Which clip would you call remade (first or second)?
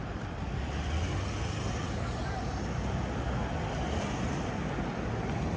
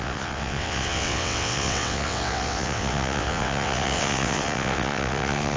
second